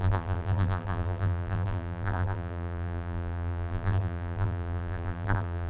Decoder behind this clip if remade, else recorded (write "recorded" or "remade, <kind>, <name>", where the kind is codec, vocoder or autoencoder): remade, vocoder, BigVGAN v2